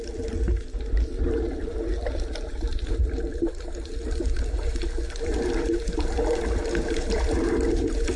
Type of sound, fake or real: fake